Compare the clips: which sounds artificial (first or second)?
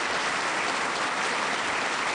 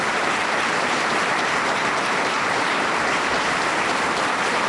second